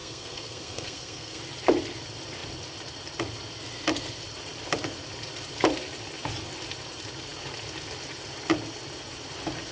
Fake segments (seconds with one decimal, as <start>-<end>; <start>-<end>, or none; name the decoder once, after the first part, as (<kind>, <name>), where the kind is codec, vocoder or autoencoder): 0.0-1.4 (codec, SNAC)